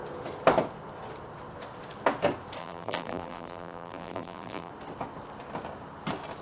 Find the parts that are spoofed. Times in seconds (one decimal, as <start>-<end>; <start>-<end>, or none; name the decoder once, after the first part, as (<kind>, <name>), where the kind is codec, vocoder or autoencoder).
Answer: 2.6-4.7 (vocoder, BigVGAN v2)